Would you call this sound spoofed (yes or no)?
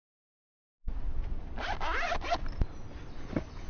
no